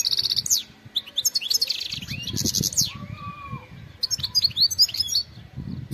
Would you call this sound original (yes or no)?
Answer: yes